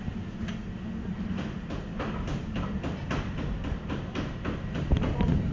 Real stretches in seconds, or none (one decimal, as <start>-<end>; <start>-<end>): 0.0-5.5